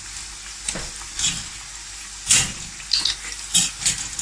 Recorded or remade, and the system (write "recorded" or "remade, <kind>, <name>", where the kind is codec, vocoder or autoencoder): recorded